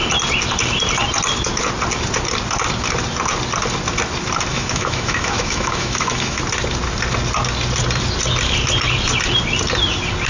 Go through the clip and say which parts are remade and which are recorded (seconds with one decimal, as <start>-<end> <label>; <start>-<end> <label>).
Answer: 0.0-4.5 recorded; 4.5-6.4 remade; 6.4-10.3 recorded